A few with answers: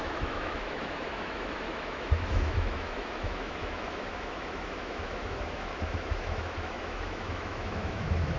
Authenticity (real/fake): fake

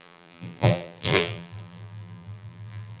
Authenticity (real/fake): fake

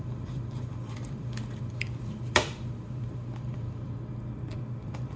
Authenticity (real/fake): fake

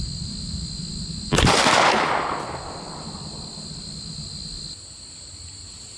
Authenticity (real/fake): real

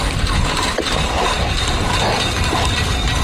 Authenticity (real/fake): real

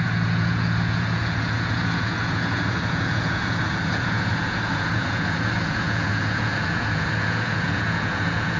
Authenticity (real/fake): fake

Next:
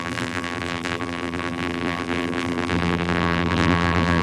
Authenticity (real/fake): fake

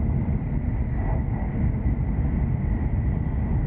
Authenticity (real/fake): real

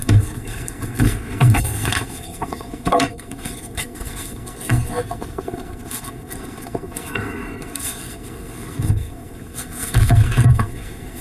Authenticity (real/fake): fake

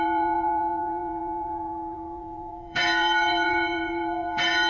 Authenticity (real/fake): fake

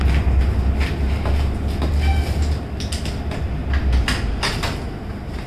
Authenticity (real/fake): real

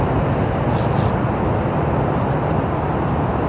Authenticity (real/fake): real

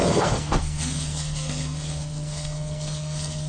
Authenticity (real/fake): fake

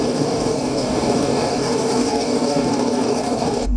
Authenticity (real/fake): fake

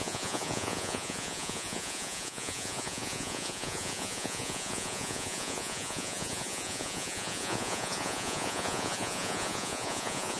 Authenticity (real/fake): fake